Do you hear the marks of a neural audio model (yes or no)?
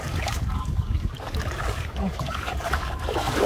yes